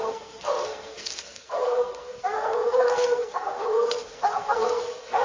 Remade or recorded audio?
remade